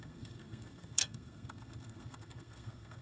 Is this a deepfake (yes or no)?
yes